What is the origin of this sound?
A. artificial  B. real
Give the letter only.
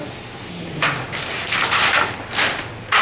B